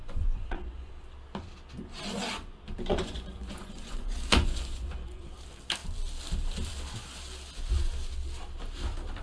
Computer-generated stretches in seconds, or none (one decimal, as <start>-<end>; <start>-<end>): 0.0-0.9; 2.9-5.2